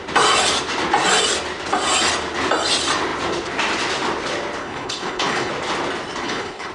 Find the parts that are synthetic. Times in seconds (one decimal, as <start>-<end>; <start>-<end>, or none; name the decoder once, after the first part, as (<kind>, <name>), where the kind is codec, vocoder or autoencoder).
4.6-5.5 (codec, HILCodec); 6.2-6.7